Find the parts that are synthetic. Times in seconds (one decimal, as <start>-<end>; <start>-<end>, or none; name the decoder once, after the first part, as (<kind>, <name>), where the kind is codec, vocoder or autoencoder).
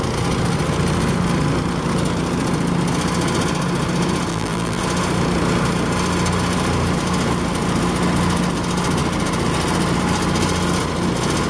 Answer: 4.3-4.8 (vocoder, BigVGAN v2)